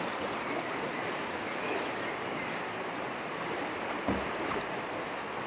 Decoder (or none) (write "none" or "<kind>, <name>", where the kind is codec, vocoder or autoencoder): none